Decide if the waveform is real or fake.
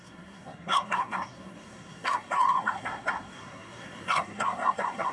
fake